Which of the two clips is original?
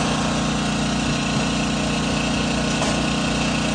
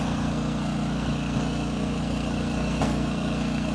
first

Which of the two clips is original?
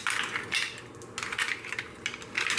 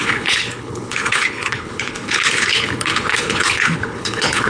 first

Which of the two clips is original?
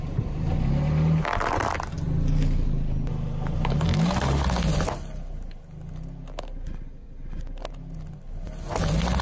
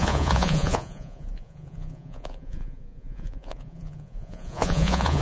first